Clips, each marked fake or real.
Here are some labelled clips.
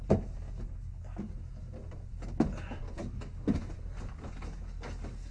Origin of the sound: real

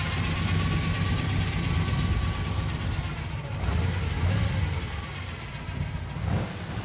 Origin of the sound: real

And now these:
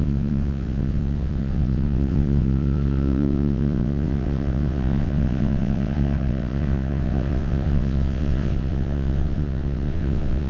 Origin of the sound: fake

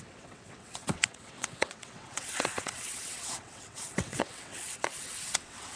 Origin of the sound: fake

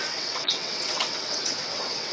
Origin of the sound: fake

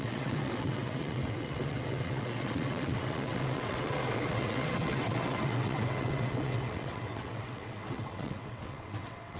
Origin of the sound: fake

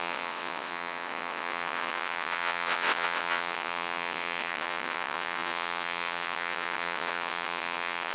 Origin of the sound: fake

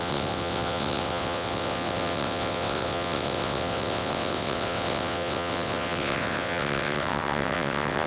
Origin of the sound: fake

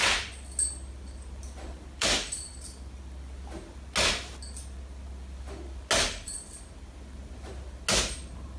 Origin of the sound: real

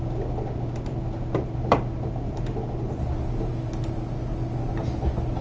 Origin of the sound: real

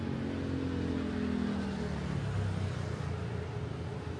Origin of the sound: real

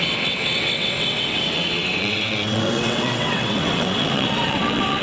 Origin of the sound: fake